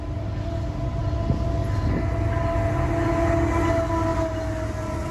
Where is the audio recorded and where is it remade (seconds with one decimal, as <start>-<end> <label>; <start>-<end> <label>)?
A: 0.0-5.1 recorded